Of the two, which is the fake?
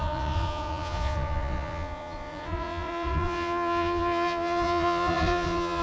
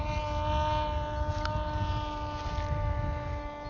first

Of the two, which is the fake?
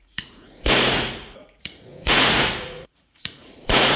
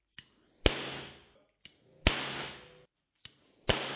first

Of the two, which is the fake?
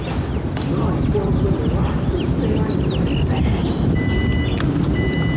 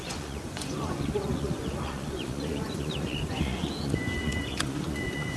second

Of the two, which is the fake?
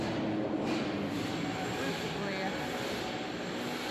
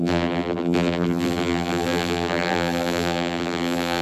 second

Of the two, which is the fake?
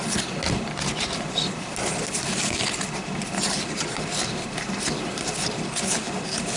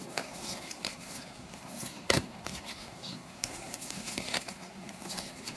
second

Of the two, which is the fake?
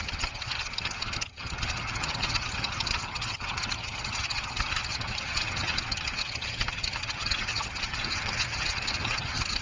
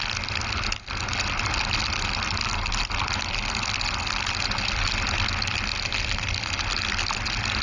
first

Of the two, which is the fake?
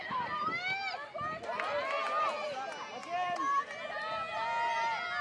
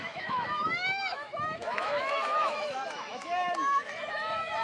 second